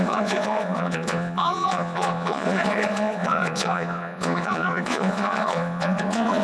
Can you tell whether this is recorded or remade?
remade